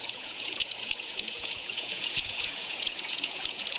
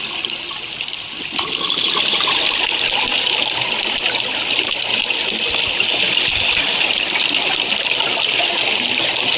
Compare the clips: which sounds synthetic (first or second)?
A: first